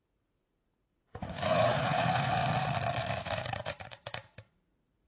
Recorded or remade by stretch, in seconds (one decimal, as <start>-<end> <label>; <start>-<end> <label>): 0.0-2.4 remade; 2.4-3.2 recorded; 3.2-5.1 remade